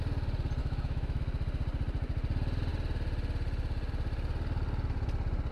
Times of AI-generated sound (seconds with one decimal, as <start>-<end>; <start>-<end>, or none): 0.6-1.2